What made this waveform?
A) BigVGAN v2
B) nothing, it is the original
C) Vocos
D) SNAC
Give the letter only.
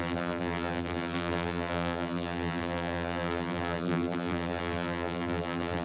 A